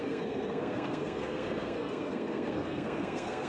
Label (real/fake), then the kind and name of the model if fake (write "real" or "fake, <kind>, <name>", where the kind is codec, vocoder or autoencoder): fake, codec, SNAC